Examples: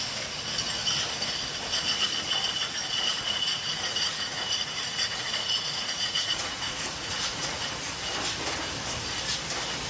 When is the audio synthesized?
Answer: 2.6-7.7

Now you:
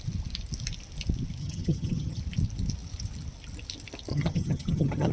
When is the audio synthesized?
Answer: 1.4-2.2; 4.1-5.1

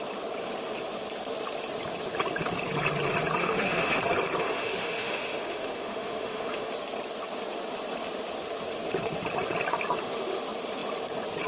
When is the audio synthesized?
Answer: 3.4-4.0; 4.4-6.7

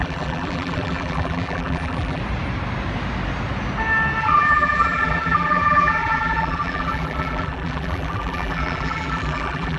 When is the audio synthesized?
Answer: 0.0-2.2; 4.2-9.8

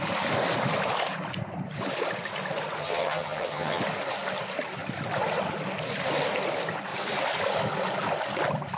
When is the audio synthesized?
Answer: 2.8-3.8